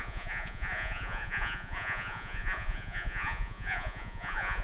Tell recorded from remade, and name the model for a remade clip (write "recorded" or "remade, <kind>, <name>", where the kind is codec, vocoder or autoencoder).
remade, vocoder, Vocos